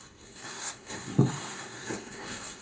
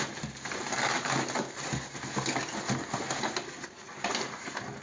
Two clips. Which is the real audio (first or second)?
second